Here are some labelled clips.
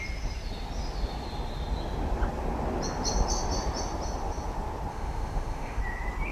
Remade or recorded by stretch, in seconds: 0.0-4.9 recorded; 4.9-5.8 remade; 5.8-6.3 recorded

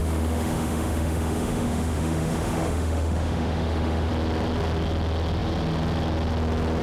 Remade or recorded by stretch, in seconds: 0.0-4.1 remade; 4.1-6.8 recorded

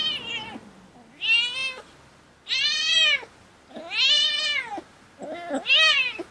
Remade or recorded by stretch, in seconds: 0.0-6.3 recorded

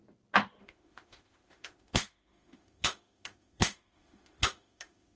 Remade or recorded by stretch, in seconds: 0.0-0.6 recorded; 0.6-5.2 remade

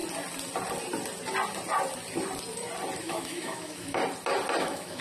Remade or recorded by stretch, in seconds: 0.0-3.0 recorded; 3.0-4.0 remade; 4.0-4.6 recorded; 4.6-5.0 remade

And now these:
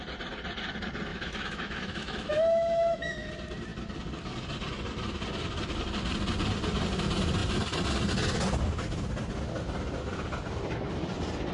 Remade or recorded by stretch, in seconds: 0.0-1.1 recorded; 1.1-3.3 remade; 3.3-11.5 recorded

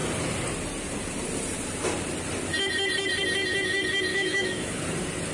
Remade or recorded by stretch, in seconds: 0.0-4.1 recorded; 4.1-4.8 remade; 4.8-5.3 recorded

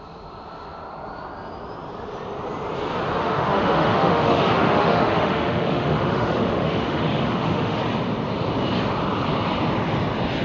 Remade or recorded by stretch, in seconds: 0.0-3.2 recorded; 3.2-7.8 remade; 7.8-10.4 recorded